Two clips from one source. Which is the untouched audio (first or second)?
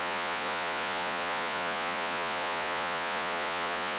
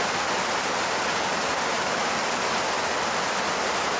second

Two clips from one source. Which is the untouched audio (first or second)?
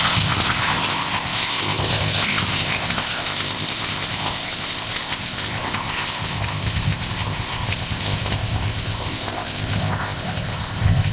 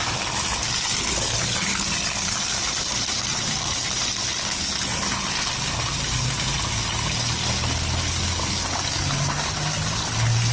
second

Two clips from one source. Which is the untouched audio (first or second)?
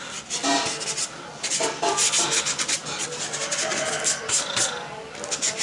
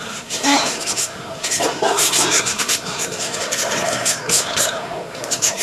first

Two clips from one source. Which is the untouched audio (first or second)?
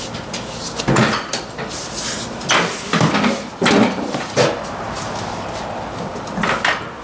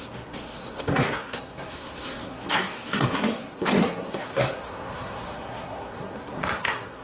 first